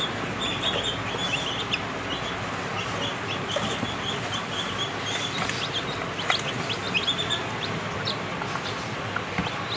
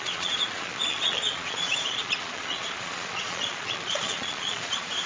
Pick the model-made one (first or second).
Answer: second